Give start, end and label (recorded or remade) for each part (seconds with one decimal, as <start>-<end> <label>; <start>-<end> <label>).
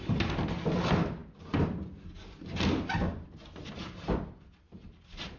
0.0-5.4 recorded